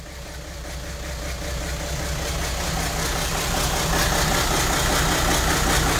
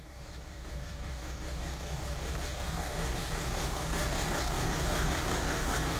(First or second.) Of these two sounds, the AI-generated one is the second